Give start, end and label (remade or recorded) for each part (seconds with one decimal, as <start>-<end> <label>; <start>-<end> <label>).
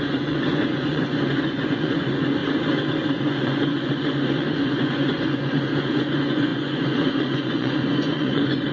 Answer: 0.0-2.4 remade; 2.4-3.2 recorded; 3.2-8.7 remade